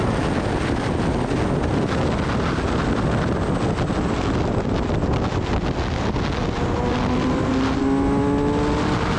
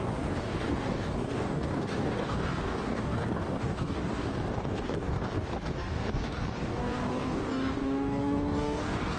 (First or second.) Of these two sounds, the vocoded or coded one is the second